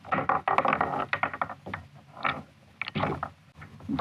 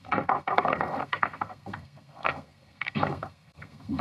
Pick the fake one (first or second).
second